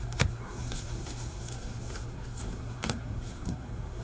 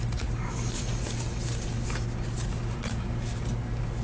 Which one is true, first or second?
second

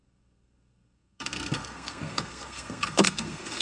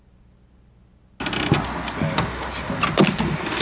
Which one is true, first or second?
second